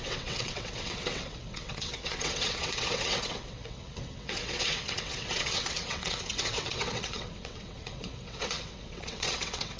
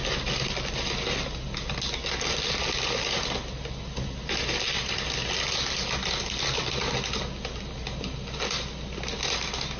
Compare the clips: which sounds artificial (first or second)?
first